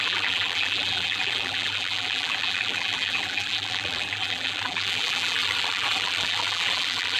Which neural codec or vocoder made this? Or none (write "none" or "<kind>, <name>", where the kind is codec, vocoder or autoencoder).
vocoder, BigVGAN v2